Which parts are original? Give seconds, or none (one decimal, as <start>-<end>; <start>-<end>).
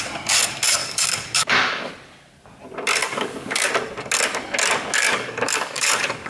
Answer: 0.0-0.8; 1.9-3.0; 3.7-5.0